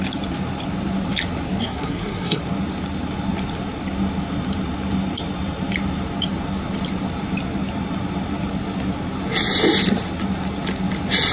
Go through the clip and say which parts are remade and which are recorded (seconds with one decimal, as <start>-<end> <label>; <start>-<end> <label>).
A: 0.0-1.6 recorded; 1.6-2.4 remade; 2.4-11.3 recorded